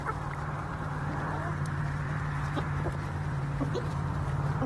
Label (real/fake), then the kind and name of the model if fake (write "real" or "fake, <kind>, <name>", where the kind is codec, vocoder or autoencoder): fake, vocoder, BigVGAN v2